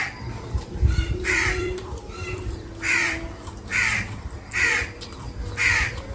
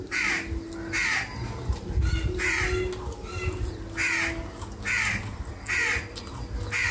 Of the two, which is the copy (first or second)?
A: first